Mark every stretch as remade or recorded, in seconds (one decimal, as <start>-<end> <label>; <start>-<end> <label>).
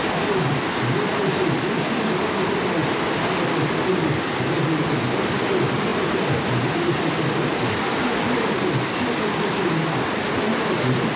0.0-11.2 recorded